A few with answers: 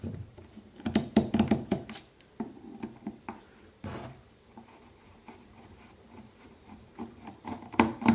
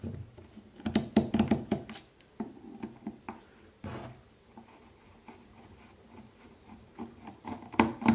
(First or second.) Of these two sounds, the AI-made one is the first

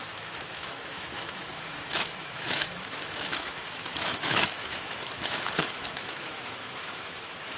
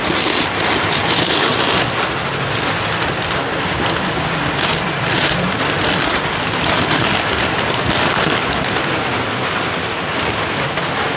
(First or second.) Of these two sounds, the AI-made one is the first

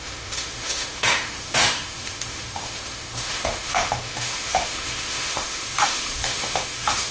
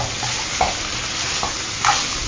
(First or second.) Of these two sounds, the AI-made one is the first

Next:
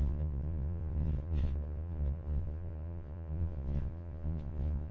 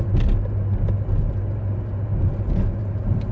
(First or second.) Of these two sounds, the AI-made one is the first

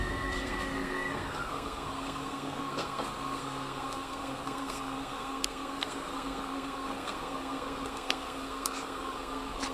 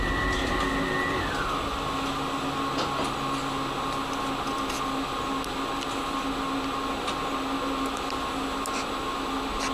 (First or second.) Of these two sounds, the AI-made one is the first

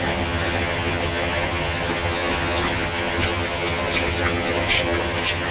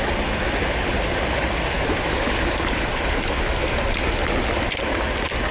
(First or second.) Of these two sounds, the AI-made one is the first